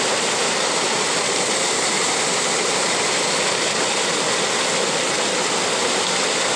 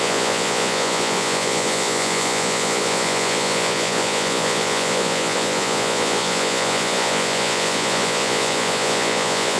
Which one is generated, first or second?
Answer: second